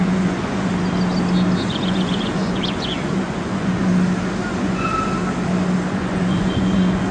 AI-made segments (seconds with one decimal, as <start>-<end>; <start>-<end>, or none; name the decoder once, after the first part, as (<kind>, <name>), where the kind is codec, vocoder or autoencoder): 0.0-0.7 (vocoder, Vocos); 1.7-3.9; 4.5-4.9; 5.9-7.1